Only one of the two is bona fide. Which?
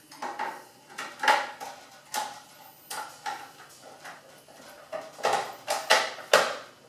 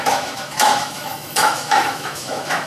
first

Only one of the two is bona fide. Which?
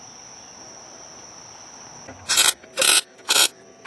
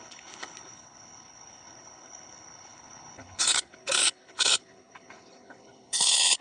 first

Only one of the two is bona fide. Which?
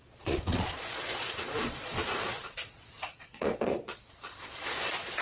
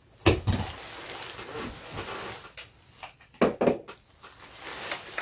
second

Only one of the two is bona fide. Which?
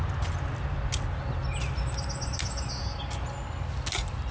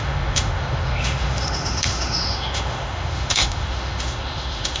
first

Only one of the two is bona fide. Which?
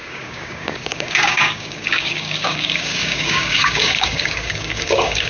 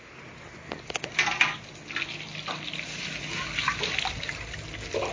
second